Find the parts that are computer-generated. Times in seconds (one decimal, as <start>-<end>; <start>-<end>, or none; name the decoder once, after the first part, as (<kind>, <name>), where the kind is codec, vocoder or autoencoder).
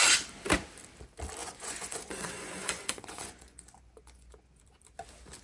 1.4-4.6 (vocoder, Vocos)